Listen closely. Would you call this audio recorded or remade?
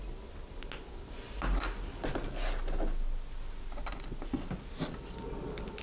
recorded